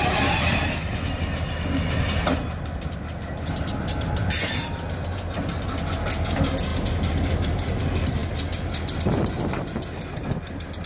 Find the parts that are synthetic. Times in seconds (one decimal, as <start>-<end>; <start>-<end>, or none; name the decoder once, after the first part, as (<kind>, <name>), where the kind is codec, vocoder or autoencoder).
none